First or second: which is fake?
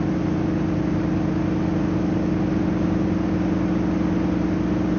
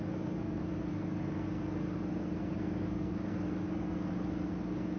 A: second